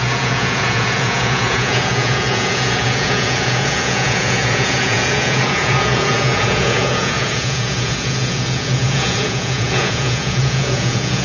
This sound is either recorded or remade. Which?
remade